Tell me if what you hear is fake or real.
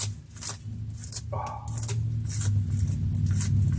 real